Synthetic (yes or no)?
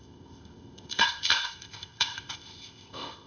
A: yes